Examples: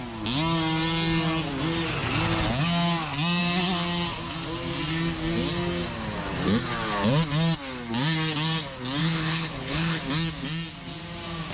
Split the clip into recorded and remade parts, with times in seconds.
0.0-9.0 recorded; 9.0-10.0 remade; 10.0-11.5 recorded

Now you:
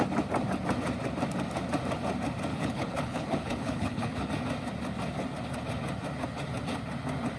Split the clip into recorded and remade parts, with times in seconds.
0.0-2.5 recorded; 2.5-4.3 remade; 4.3-7.4 recorded